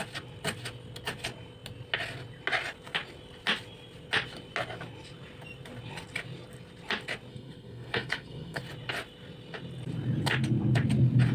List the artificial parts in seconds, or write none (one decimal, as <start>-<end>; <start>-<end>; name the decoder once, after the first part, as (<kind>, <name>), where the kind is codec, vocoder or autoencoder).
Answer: 7.3-8.6 (codec, SNAC)